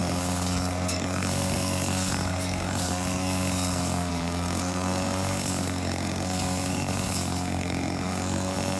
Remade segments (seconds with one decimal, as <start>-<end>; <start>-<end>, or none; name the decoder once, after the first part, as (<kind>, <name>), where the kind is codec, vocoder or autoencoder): 0.0-8.8 (codec, SNAC)